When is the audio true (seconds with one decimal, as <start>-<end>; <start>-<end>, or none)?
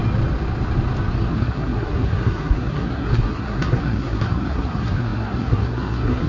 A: 0.0-1.3